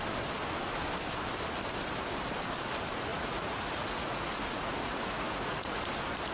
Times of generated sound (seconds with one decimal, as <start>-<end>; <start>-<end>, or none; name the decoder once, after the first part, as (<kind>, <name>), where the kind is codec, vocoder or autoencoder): 3.1-5.8 (vocoder, Vocos)